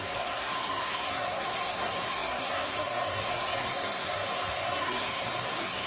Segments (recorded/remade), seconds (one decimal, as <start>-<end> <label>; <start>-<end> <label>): 0.0-5.9 remade